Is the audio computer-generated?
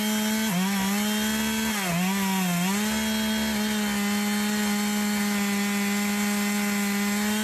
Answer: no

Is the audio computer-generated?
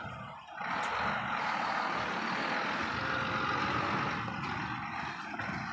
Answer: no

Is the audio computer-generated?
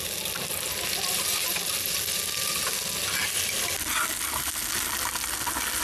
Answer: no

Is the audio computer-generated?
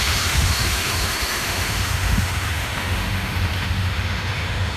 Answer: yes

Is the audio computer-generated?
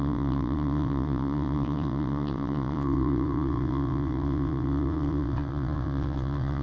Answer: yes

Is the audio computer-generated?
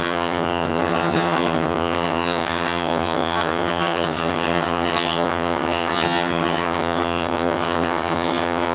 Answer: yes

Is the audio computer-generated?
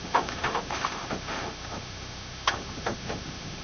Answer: yes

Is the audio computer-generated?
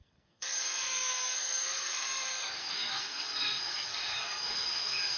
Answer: yes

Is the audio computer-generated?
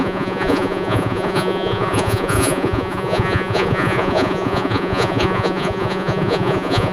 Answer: yes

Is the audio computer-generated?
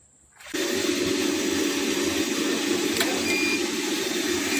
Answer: no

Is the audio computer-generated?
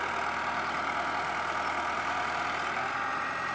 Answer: no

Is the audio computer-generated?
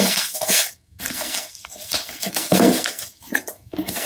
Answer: yes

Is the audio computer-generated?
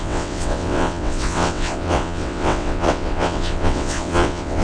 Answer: yes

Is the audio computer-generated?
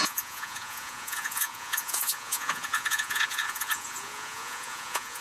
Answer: yes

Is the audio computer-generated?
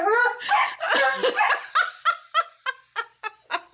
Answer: no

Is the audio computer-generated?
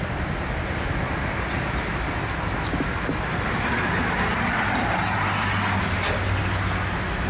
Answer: no